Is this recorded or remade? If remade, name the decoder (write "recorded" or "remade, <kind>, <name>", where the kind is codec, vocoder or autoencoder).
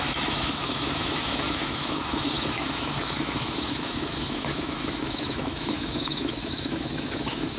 remade, autoencoder, DAC-VAE